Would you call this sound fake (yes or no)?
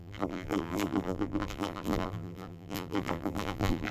yes